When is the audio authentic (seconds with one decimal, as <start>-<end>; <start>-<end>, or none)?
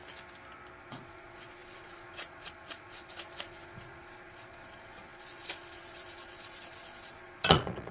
0.0-0.8